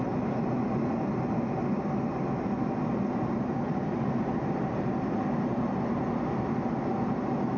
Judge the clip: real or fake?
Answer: real